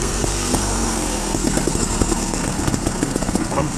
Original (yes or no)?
no